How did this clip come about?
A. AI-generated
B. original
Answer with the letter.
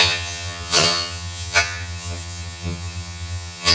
A